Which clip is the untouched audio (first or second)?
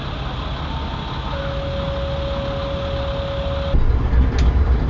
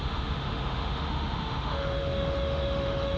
first